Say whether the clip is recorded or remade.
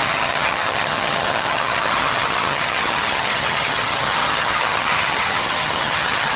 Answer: remade